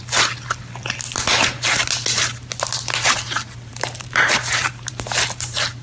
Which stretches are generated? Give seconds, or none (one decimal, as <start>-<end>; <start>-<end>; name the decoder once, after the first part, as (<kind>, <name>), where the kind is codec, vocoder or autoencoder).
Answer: 3.7-4.9 (vocoder, BigVGAN v2)